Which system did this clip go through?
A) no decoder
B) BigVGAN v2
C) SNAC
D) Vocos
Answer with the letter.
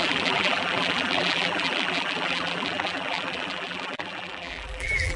B